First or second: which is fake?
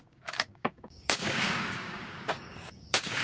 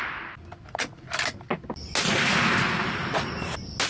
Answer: first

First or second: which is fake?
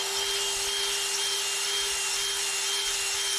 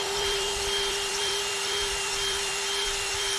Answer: second